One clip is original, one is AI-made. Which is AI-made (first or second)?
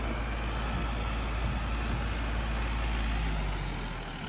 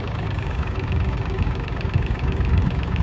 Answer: second